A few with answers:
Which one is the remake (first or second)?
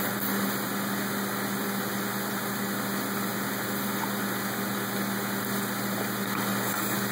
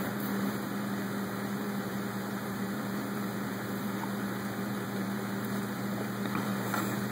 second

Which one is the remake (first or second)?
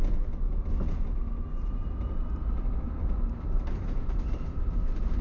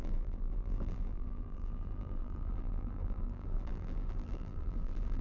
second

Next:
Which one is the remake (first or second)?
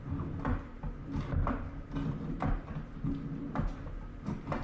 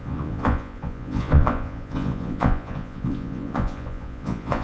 second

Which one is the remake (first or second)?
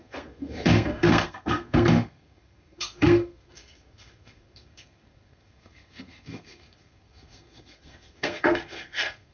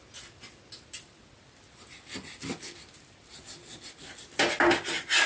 first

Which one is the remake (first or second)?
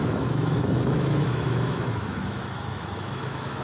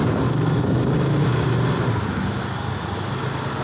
first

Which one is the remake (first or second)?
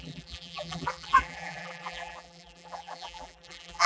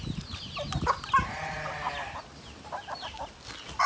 first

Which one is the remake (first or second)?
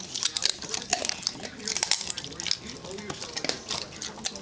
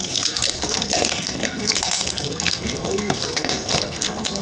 second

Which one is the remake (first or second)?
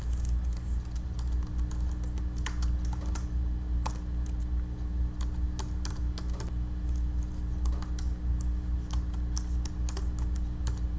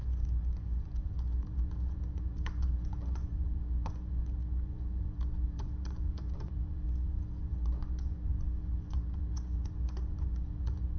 second